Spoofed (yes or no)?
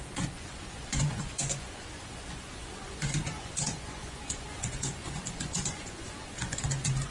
yes